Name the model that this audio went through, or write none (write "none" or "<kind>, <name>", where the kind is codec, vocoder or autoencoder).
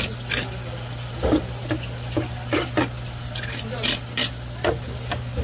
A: none